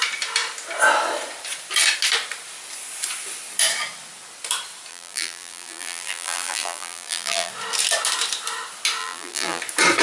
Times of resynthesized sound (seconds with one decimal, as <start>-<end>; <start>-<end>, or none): 4.9-7.5; 9.0-9.6

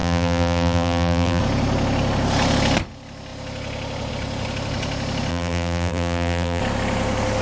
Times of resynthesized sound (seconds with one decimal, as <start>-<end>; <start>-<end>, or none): 0.0-1.4; 5.3-6.6

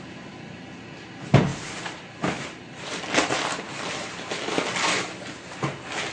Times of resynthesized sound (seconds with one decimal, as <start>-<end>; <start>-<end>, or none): none

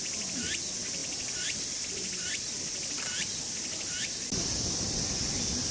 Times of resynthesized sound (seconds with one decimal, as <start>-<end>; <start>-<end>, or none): none